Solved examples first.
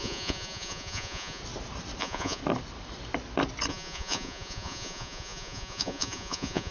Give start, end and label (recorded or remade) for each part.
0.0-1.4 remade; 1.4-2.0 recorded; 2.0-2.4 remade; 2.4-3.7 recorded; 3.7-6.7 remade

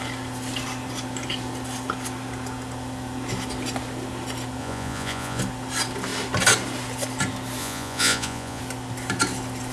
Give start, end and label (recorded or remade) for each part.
0.0-4.6 recorded; 4.6-5.4 remade; 5.4-7.6 recorded; 7.6-8.6 remade; 8.6-9.7 recorded